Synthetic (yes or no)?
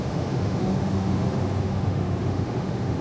yes